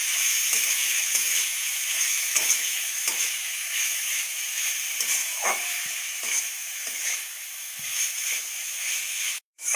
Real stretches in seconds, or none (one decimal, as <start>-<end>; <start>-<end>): 4.7-5.2